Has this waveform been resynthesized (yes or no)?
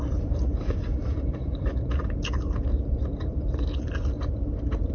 yes